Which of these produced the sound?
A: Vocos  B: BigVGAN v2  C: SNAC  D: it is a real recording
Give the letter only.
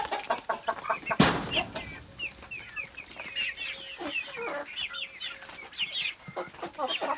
D